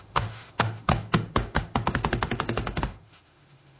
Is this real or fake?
fake